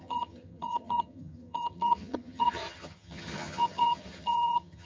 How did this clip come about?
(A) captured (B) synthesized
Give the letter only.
B